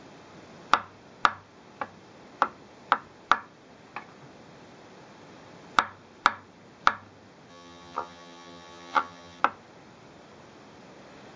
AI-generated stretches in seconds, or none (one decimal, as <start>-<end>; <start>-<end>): 7.5-9.4